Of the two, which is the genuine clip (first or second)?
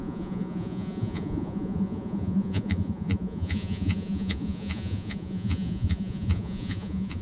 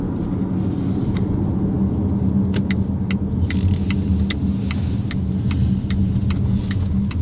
second